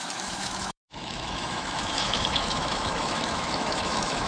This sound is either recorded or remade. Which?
remade